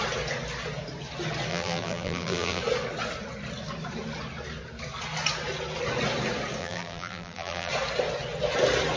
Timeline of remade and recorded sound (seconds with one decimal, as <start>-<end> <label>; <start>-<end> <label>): 0.0-1.5 recorded; 1.5-2.6 remade; 2.6-6.6 recorded; 6.6-7.7 remade; 7.7-9.0 recorded